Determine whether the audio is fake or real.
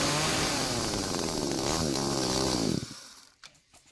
fake